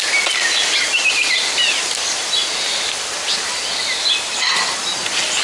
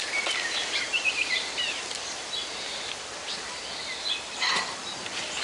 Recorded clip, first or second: first